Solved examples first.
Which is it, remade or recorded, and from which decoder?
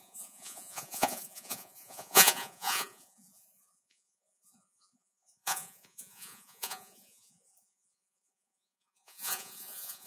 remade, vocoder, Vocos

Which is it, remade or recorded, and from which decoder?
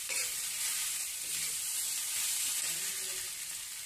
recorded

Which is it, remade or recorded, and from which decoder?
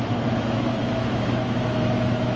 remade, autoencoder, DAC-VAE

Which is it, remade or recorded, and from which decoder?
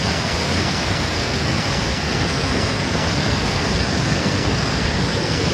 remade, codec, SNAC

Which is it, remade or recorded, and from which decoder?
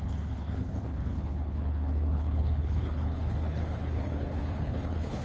remade, codec, HILCodec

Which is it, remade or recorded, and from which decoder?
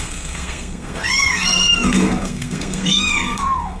remade, codec, SNAC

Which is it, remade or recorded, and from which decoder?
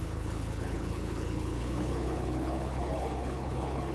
remade, codec, HILCodec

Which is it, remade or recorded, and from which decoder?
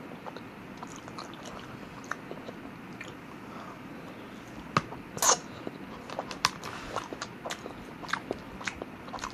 recorded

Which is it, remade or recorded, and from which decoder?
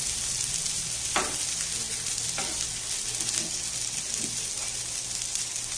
recorded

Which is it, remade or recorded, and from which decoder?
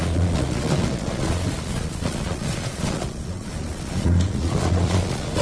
remade, vocoder, Vocos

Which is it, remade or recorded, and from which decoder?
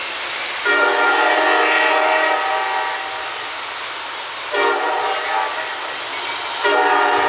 recorded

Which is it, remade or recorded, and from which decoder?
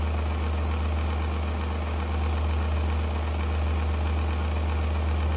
recorded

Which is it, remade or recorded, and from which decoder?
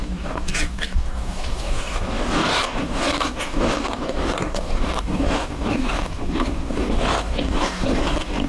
remade, codec, DAC